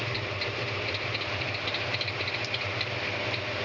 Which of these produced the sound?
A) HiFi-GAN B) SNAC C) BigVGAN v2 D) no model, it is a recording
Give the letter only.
C